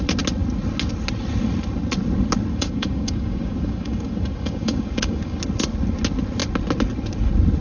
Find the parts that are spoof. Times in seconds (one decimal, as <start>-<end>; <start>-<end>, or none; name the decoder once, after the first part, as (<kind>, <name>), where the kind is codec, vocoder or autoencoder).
2.5-5.4 (codec, DAC)